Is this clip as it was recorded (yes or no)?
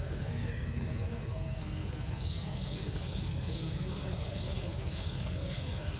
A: no